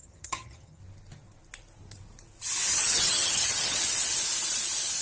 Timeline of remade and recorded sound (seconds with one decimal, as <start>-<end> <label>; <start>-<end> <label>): 0.0-0.8 remade; 0.8-2.7 recorded; 2.7-3.9 remade; 3.9-5.0 recorded